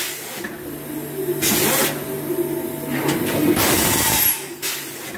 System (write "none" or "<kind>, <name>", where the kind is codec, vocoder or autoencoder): none